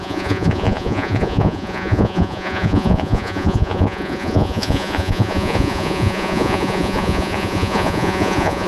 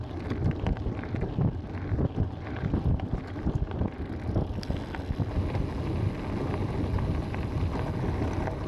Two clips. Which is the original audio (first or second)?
second